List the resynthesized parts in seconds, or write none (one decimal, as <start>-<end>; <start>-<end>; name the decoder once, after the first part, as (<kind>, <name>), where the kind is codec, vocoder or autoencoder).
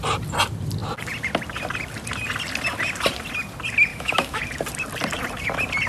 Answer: 3.9-4.4 (autoencoder, DAC-VAE)